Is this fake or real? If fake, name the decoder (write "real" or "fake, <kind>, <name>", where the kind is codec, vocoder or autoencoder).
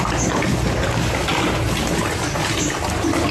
real